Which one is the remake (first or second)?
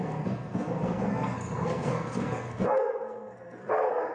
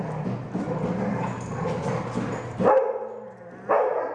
first